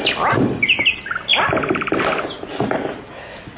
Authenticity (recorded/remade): recorded